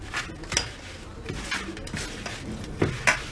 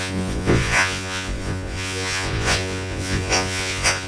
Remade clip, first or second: second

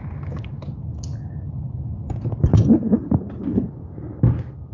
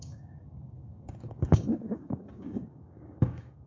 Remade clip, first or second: second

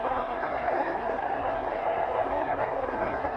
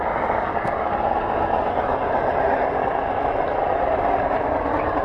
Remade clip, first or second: first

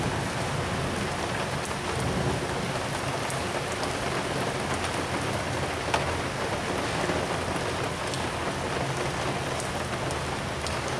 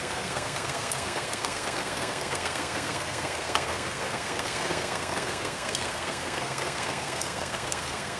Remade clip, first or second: second